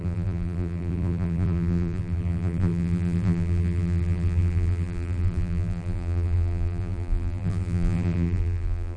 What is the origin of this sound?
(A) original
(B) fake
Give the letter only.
B